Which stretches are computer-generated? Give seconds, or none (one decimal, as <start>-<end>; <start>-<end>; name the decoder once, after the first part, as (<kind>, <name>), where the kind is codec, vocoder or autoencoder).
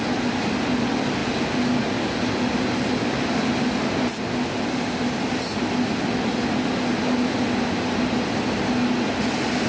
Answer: none